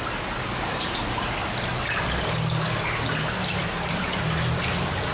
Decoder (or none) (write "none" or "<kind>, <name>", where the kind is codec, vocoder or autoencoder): none